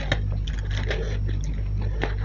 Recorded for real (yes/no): yes